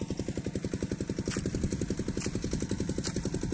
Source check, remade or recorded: recorded